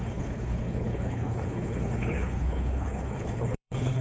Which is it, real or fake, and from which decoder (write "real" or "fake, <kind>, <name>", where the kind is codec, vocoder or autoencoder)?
fake, codec, HILCodec